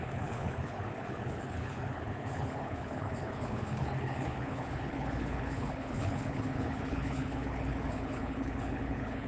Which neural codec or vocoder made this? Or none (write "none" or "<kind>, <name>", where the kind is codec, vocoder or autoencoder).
codec, HILCodec